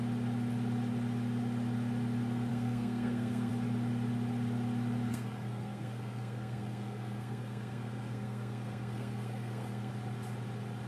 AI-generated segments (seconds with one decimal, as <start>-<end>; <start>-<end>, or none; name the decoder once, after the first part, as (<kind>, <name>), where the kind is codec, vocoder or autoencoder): 2.5-3.5 (codec, SNAC); 5.1-9.9